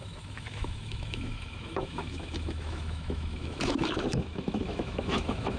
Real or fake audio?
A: fake